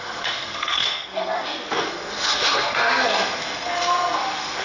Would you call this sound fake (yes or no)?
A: yes